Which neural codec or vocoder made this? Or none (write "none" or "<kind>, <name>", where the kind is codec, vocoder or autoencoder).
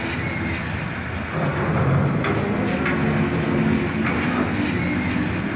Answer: none